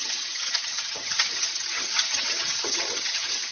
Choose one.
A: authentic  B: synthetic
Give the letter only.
B